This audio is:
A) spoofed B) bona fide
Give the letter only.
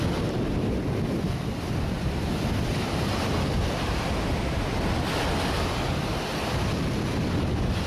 B